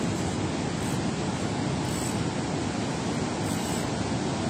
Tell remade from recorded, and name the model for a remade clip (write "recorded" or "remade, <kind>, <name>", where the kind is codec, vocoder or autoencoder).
recorded